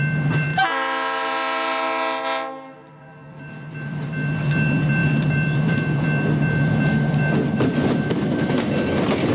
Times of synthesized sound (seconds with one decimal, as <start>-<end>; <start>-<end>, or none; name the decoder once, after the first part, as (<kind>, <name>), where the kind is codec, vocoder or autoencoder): none